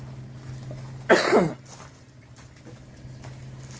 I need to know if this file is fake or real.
real